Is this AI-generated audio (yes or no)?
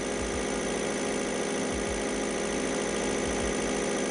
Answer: no